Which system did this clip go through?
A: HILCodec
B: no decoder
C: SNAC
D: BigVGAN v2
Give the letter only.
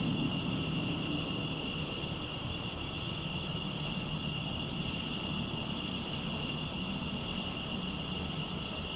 B